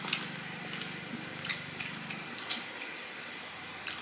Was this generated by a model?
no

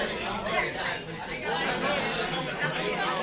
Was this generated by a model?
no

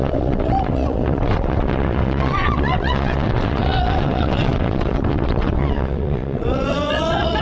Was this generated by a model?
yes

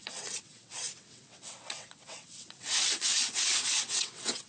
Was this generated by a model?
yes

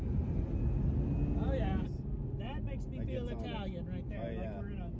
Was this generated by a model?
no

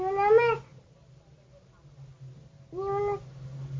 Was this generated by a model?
no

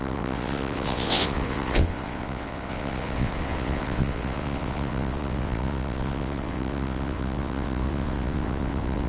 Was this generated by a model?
yes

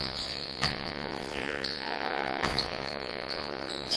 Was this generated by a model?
yes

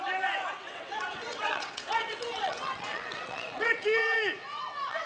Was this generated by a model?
yes